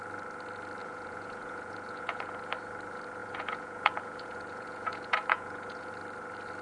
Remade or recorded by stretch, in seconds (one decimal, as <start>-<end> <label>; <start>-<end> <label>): 0.0-0.8 recorded; 0.8-2.4 remade; 2.4-3.2 recorded; 3.2-5.9 remade; 5.9-6.6 recorded

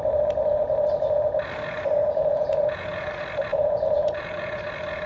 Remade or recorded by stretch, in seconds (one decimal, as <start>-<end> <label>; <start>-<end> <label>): 0.0-2.0 recorded; 2.0-3.1 remade; 3.1-3.5 recorded; 3.5-4.6 remade; 4.6-5.1 recorded

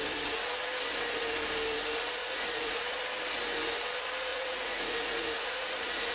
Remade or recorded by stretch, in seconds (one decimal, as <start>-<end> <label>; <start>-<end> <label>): 0.0-2.2 recorded; 2.2-2.8 remade; 2.8-4.3 recorded; 4.3-6.1 remade

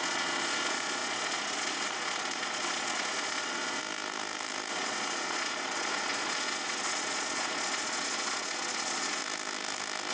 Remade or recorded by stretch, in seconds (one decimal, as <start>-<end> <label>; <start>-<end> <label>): 0.0-3.8 remade; 3.8-4.7 recorded; 4.7-9.2 remade; 9.2-10.1 recorded

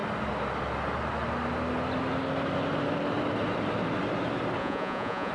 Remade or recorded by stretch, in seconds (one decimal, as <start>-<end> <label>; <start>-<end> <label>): 0.0-4.6 recorded; 4.6-5.3 remade